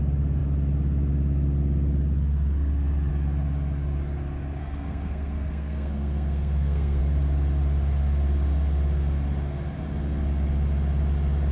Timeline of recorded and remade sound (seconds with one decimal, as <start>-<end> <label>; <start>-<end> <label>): 0.0-4.6 recorded; 4.6-7.0 remade; 7.0-11.5 recorded